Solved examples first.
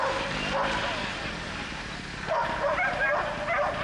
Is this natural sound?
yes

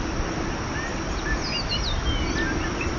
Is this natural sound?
yes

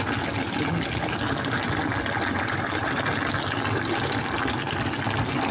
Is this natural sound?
yes